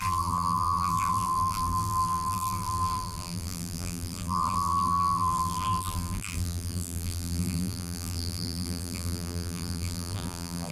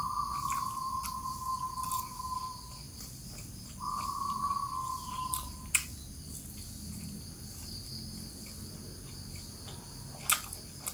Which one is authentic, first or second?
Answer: second